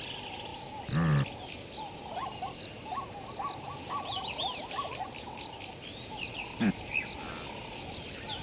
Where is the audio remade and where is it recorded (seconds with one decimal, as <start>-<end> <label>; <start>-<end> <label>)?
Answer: 0.0-8.4 recorded